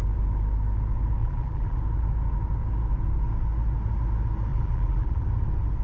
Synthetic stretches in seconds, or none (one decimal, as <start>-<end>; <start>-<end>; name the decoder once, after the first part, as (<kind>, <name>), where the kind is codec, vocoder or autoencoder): 1.2-1.8 (vocoder, BigVGAN v2); 4.5-5.3

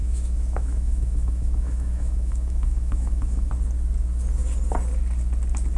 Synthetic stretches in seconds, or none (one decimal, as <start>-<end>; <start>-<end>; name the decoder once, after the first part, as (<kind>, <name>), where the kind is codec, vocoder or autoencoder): 0.0-3.5 (autoencoder, DAC-VAE)

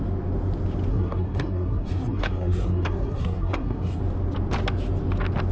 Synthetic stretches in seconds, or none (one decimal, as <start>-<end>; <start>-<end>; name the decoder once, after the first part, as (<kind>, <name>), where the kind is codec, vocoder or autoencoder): 0.9-4.0 (codec, SNAC)

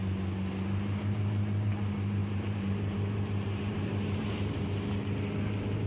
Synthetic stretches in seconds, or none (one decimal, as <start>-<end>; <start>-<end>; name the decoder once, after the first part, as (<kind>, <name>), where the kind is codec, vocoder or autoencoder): 2.2-4.6 (vocoder, BigVGAN v2)

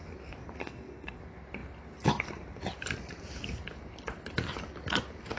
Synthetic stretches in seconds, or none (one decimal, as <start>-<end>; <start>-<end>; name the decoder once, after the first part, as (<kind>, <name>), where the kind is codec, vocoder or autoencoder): 0.6-1.2 (codec, SNAC)

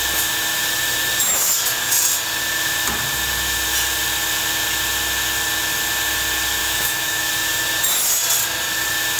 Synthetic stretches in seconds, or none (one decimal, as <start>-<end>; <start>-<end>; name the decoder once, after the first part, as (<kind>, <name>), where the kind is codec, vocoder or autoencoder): 6.6-7.3 (autoencoder, DAC-VAE)

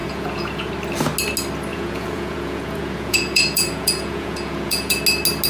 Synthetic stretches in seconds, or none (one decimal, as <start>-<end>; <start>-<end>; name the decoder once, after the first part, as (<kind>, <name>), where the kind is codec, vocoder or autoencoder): 0.0-0.7 (vocoder, Vocos); 1.7-5.0